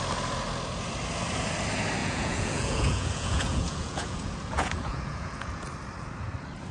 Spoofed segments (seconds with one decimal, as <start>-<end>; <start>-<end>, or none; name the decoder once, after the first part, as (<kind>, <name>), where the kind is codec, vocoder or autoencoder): 2.0-5.7 (vocoder, Vocos)